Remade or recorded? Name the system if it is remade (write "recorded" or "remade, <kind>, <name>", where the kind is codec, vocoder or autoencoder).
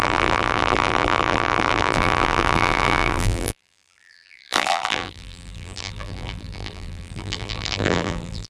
remade, vocoder, BigVGAN v2